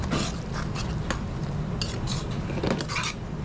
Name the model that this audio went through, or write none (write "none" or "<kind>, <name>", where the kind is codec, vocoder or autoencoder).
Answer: none